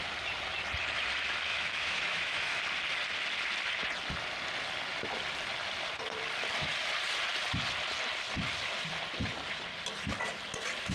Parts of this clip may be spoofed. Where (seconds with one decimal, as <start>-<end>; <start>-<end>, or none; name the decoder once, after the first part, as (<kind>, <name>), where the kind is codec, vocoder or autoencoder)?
1.5-2.6 (autoencoder, DAC-VAE)